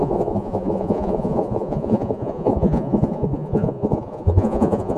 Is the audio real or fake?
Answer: fake